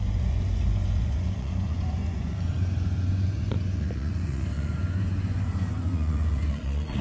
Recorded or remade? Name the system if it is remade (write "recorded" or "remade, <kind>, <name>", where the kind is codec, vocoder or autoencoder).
remade, vocoder, Vocos